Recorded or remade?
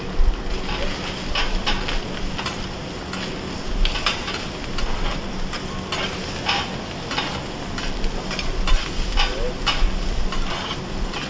recorded